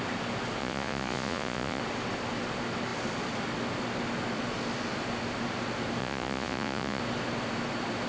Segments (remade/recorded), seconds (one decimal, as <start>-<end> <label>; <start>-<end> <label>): 0.0-0.6 recorded; 0.6-1.8 remade; 1.8-6.0 recorded; 6.0-7.0 remade; 7.0-8.1 recorded